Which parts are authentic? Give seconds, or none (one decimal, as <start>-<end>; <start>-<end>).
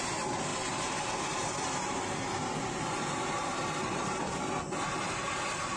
0.0-5.8